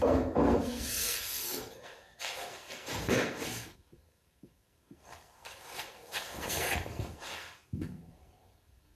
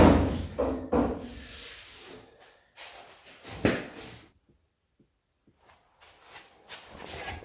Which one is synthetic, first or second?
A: first